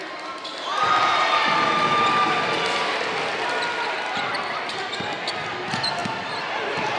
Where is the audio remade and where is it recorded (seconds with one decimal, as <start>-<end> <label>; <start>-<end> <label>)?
0.0-7.0 recorded